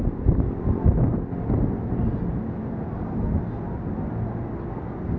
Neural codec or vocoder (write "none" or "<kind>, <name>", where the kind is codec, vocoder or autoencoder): none